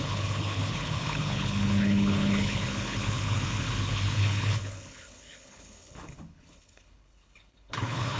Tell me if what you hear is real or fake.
fake